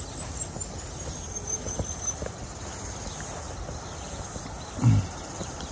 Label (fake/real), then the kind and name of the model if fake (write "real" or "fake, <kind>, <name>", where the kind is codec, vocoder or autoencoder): real